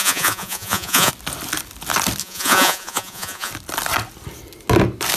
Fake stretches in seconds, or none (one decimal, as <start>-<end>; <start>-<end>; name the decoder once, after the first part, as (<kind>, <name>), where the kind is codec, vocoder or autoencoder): 0.0-1.1 (vocoder, Vocos); 2.2-3.5